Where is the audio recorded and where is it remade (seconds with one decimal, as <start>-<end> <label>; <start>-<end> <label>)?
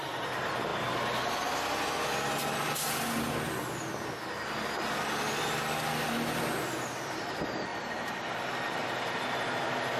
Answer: 0.0-10.0 recorded